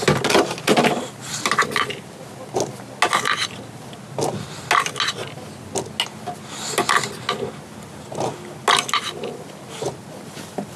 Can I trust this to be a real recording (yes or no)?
yes